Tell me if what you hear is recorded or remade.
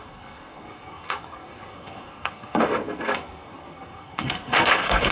remade